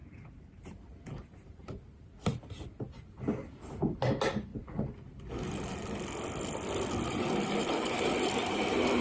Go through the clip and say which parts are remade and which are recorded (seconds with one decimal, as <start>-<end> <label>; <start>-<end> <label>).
0.0-2.6 remade; 2.6-9.0 recorded